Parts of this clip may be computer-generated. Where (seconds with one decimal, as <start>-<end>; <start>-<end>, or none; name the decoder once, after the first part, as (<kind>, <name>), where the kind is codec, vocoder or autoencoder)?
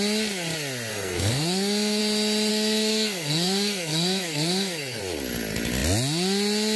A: 0.9-2.0 (codec, SNAC); 2.5-5.0